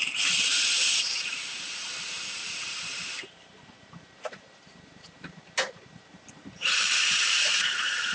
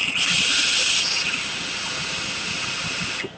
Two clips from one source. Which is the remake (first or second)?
first